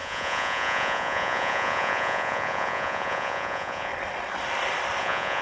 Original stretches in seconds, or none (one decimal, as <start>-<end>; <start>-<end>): 3.9-5.0